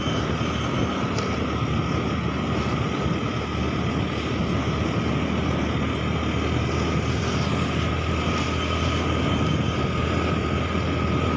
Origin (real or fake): real